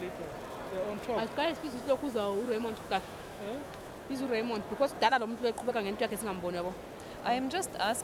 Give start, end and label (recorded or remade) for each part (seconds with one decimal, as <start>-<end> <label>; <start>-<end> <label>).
0.0-1.6 recorded; 1.6-3.9 remade; 3.9-5.1 recorded; 5.1-5.7 remade; 5.7-8.0 recorded